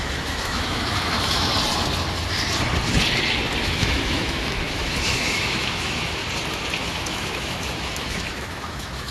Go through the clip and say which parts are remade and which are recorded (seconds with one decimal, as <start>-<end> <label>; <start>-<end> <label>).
0.0-1.5 remade; 1.5-3.6 recorded; 3.6-6.2 remade; 6.2-6.8 recorded; 6.8-9.1 remade